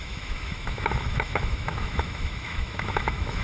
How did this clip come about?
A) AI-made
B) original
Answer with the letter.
A